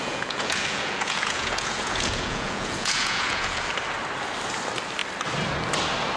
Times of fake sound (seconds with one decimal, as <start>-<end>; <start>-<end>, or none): 0.0-3.7